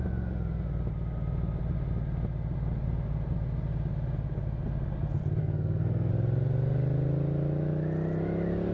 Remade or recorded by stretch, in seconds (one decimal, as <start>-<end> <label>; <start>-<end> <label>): 0.0-5.4 recorded; 5.4-6.1 remade; 6.1-8.7 recorded